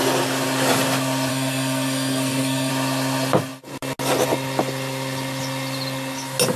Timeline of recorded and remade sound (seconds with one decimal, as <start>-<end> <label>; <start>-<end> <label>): 0.0-1.3 recorded; 1.3-2.7 remade; 2.7-6.6 recorded